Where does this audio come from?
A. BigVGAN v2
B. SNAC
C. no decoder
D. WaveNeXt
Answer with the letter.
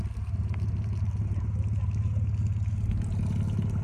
C